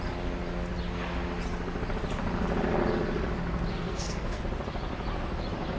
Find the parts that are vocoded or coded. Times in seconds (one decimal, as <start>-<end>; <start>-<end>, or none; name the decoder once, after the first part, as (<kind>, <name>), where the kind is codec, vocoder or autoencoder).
3.7-4.4 (codec, SNAC)